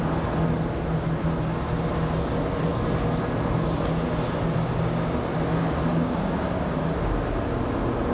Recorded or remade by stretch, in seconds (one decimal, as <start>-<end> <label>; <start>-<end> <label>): 0.0-5.9 recorded; 5.9-6.8 remade; 6.8-8.1 recorded